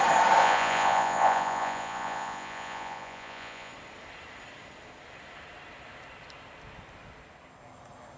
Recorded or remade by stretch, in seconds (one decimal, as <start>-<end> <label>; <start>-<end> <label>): 0.0-0.4 recorded; 0.4-3.7 remade; 3.7-8.2 recorded